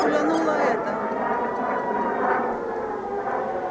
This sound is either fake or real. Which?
real